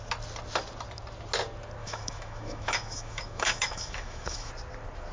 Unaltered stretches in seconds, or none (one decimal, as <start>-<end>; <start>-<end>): 0.0-1.8; 4.5-5.1